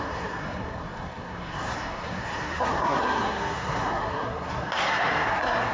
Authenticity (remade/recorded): remade